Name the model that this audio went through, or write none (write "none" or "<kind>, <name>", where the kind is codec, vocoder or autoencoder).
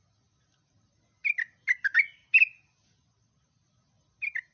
none